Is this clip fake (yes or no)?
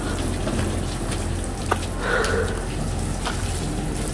no